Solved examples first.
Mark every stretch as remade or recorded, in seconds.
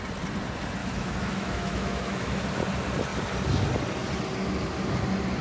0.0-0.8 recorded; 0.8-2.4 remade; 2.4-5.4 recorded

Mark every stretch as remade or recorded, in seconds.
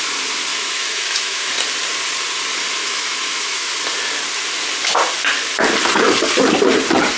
0.0-0.5 recorded; 0.5-1.5 remade; 1.5-2.8 recorded; 2.8-3.7 remade; 3.7-7.2 recorded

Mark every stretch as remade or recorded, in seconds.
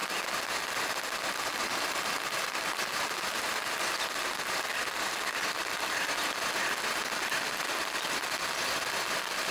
0.0-9.5 recorded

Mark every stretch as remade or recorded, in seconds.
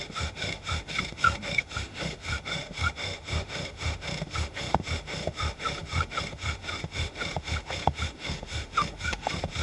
0.0-9.6 remade